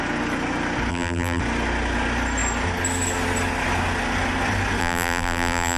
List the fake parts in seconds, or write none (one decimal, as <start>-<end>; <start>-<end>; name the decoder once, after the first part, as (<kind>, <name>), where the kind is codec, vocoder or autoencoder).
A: 0.9-1.4 (vocoder, BigVGAN v2); 4.8-5.8